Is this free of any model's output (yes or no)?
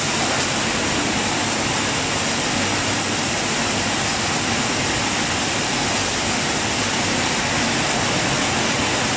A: yes